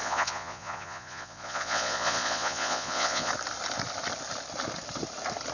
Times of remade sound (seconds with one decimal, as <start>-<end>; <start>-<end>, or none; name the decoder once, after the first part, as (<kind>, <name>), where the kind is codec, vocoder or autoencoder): 0.0-3.3 (vocoder, Vocos)